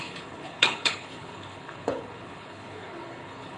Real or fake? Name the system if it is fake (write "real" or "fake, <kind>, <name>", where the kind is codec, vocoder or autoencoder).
fake, codec, HILCodec